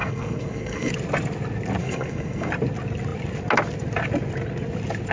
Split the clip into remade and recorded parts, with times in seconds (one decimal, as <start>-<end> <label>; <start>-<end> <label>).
0.0-0.9 remade; 0.9-1.8 recorded; 1.8-2.5 remade; 2.5-5.1 recorded